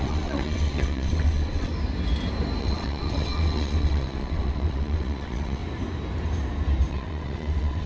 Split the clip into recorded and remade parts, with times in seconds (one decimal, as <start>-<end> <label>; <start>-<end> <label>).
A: 0.0-1.7 remade; 1.7-2.6 recorded; 2.6-5.6 remade; 5.6-6.9 recorded; 6.9-7.9 remade